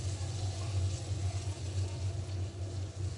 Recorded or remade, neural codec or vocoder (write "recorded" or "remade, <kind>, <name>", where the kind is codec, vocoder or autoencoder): remade, vocoder, Vocos